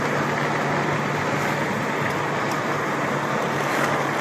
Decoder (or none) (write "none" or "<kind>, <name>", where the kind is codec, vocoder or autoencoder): none